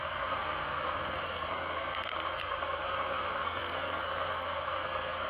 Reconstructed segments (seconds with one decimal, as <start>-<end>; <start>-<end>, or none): 0.0-5.3